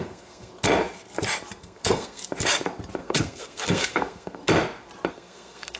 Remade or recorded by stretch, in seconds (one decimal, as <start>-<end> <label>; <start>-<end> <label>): 0.0-0.5 remade; 0.5-1.6 recorded; 1.6-2.2 remade; 2.2-3.0 recorded; 3.0-4.4 remade; 4.4-5.1 recorded; 5.1-5.8 remade